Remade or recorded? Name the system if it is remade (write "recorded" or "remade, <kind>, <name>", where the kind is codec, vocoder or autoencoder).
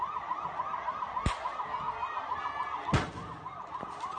recorded